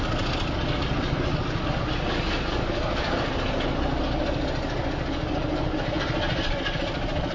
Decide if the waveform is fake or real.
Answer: real